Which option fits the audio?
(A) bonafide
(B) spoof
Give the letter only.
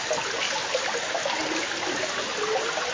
A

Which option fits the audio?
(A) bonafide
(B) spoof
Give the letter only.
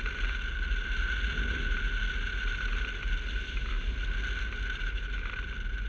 A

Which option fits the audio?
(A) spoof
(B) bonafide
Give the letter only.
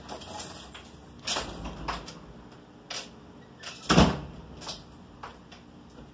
B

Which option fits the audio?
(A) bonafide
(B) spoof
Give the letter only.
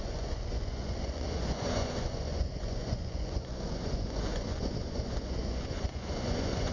B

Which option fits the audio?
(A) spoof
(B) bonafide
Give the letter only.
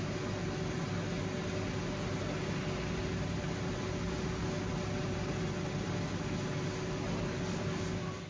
B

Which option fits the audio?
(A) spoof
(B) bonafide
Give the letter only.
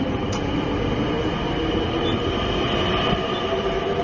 B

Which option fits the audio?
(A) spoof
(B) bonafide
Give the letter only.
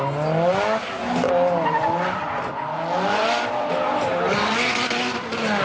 B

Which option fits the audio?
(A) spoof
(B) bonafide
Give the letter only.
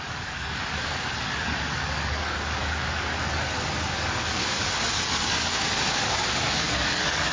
A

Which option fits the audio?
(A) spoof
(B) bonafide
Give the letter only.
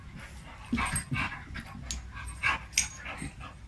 B